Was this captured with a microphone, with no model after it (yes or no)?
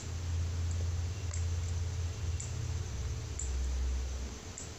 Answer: yes